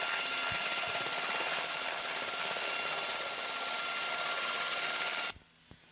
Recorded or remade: recorded